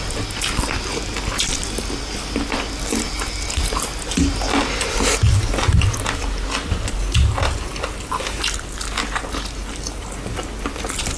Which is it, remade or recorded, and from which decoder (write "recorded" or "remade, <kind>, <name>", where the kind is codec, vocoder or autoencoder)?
recorded